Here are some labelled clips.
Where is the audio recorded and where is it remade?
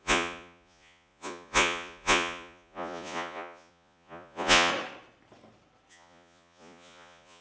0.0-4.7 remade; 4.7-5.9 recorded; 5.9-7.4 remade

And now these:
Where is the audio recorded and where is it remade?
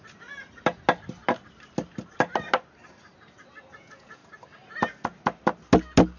0.0-3.7 recorded; 3.7-4.2 remade; 4.2-6.2 recorded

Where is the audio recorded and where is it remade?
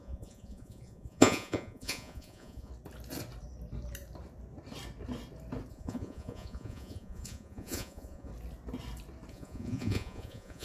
0.0-2.7 remade; 2.7-5.7 recorded; 5.7-8.3 remade; 8.3-9.3 recorded; 9.3-10.6 remade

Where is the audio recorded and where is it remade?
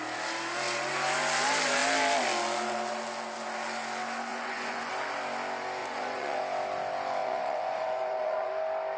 0.0-4.3 recorded; 4.3-4.9 remade; 4.9-5.8 recorded; 5.8-6.4 remade; 6.4-7.2 recorded; 7.2-8.5 remade; 8.5-9.0 recorded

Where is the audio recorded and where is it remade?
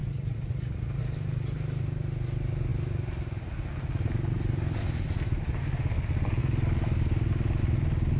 0.0-1.0 remade; 1.0-8.2 recorded